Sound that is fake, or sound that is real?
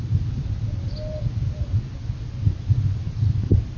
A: real